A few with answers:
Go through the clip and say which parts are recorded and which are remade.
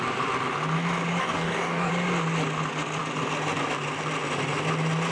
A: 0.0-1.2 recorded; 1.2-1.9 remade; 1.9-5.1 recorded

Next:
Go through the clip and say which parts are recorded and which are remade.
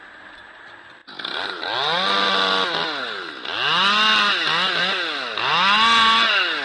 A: 0.0-6.6 recorded